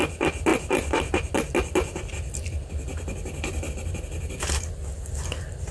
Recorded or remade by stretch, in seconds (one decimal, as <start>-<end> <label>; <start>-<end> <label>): 0.0-5.7 recorded